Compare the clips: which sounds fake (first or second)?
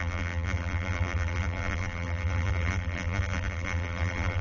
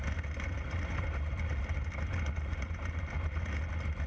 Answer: first